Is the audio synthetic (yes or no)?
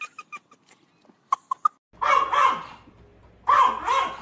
no